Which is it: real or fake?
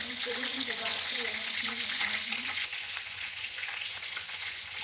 fake